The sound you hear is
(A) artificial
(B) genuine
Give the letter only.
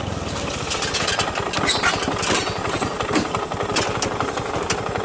B